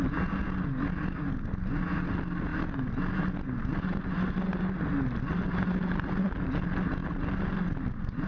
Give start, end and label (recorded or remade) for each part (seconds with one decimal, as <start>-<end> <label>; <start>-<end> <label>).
0.0-8.3 recorded